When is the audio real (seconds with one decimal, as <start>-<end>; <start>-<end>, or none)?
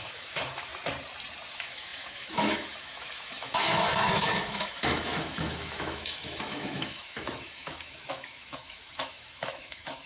0.7-1.5